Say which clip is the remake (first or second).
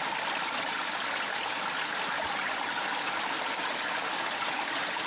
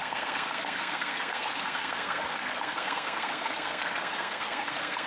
second